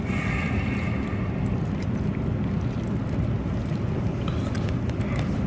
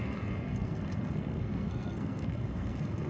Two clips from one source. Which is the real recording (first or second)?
first